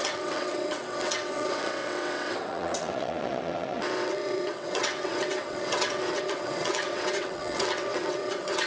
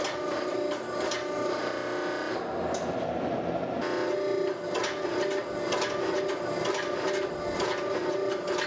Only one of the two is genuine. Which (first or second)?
second